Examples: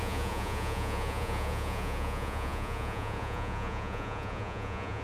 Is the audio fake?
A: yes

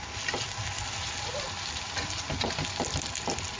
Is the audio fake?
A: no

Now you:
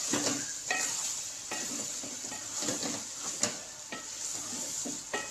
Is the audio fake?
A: no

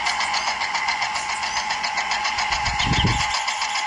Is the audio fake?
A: yes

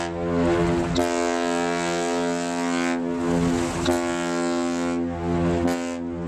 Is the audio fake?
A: no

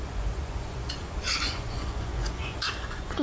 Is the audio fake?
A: yes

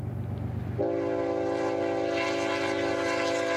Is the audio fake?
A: no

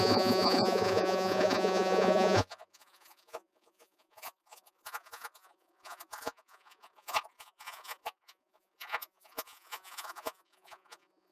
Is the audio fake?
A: yes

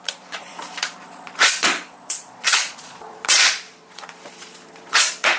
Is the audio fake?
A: yes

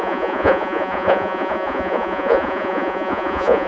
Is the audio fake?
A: yes